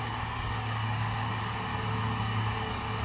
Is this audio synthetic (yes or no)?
yes